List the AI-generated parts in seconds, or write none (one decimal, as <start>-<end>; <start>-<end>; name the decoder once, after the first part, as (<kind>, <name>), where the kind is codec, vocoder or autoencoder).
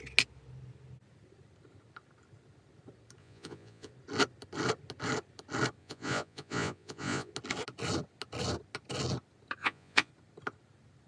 3.2-3.9 (vocoder, Vocos); 5.8-7.3; 9.6-10.1